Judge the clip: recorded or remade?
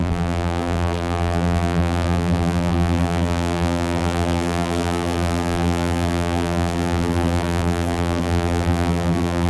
remade